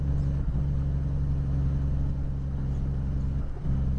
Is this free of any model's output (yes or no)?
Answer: yes